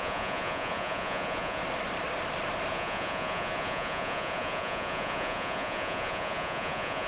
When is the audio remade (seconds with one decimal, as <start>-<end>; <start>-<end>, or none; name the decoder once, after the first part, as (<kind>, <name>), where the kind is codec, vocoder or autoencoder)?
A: 0.0-1.6 (vocoder, Vocos); 2.7-7.1